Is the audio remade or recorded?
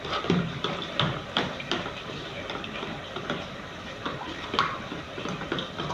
remade